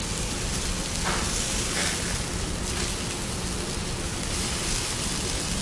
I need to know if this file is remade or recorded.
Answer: recorded